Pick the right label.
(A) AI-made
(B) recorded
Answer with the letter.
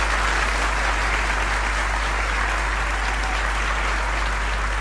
B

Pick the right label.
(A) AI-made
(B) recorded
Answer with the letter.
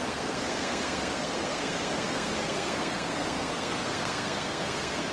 A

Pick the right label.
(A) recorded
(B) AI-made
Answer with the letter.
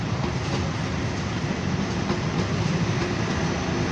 A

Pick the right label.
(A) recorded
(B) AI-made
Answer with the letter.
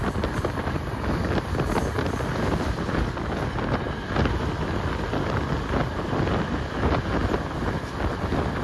A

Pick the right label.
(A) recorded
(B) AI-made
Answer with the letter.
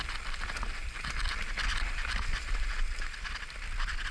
A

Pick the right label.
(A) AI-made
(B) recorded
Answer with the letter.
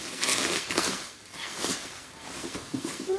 A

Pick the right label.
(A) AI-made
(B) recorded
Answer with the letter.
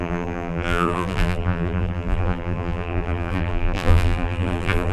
A